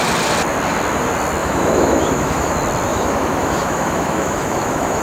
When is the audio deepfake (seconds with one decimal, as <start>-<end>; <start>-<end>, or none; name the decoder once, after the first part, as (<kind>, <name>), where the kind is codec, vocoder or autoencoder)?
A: 1.4-2.5 (autoencoder, DAC-VAE); 2.9-5.0